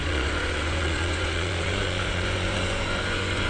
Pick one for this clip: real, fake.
fake